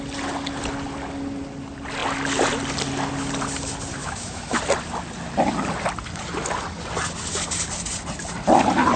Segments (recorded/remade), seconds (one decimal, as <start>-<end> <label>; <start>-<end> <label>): 0.0-4.0 recorded; 4.0-4.6 remade; 4.6-9.0 recorded